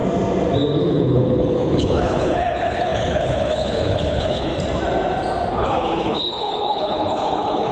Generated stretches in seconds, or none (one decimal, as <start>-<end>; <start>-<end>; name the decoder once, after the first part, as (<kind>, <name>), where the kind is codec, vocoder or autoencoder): 0.8-4.5 (codec, HILCodec); 5.5-7.7